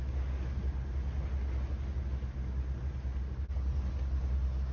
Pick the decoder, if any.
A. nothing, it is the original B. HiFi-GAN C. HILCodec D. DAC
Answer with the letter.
A